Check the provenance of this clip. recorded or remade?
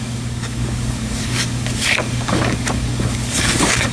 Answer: remade